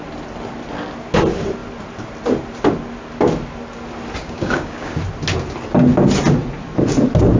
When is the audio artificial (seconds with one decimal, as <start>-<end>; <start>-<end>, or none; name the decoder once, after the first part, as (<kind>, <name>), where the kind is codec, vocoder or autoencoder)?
4.2-4.9 (codec, DAC)